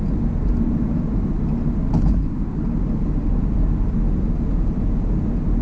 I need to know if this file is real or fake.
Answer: real